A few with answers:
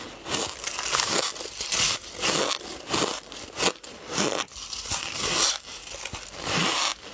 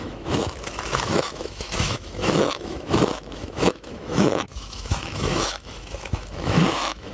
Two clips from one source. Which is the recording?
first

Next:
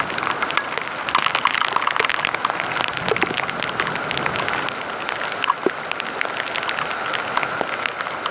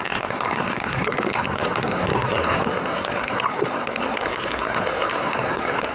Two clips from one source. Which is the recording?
first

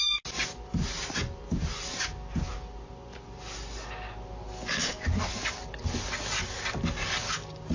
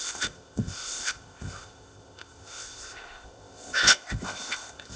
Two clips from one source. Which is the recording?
first